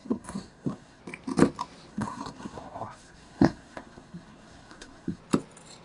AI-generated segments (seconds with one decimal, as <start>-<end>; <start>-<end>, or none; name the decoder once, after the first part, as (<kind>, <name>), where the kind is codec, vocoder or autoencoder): 0.0-1.0 (codec, SNAC); 1.9-5.2